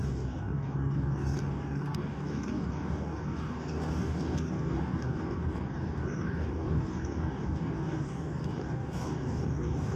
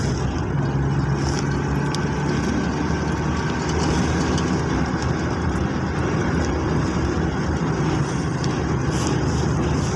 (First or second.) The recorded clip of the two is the second